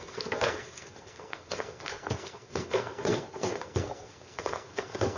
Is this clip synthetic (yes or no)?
yes